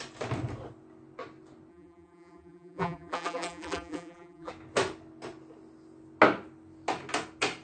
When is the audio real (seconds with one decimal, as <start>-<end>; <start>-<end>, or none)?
0.0-1.7; 4.5-7.6